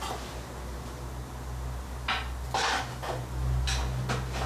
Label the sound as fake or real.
real